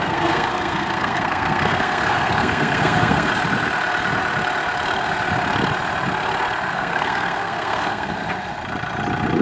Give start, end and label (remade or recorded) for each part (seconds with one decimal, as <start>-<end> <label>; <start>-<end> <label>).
0.0-3.3 remade; 3.3-6.7 recorded; 6.7-8.2 remade; 8.2-9.4 recorded